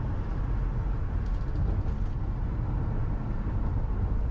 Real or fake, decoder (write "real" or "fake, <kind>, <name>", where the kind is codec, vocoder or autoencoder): real